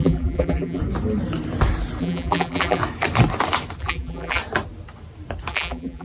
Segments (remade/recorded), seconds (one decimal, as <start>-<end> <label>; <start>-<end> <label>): 0.0-0.8 remade; 0.8-2.0 recorded; 2.0-2.8 remade; 2.8-3.8 recorded; 3.8-4.4 remade; 4.4-5.5 recorded; 5.5-6.0 remade

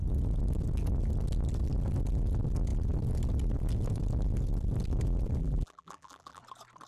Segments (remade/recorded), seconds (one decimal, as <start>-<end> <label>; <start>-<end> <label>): 0.0-5.4 recorded; 5.4-6.4 remade; 6.4-6.9 recorded

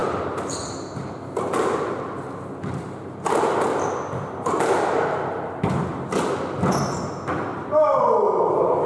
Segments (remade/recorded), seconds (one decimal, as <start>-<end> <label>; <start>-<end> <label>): 0.0-0.6 remade; 0.6-7.5 recorded; 7.5-8.9 remade

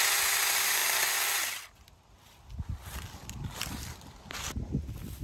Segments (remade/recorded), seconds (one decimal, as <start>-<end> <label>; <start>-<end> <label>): 0.0-5.2 recorded

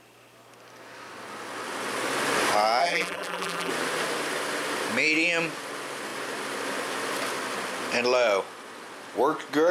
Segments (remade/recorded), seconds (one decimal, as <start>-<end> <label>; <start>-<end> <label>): 0.0-2.8 recorded; 2.8-3.7 remade; 3.7-9.7 recorded

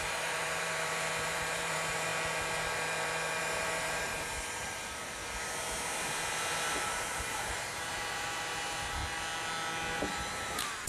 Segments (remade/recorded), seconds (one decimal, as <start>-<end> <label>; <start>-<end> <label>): 0.0-2.1 remade; 2.1-3.4 recorded; 3.4-5.2 remade; 5.2-6.7 recorded; 6.7-9.0 remade; 9.0-10.1 recorded; 10.1-10.9 remade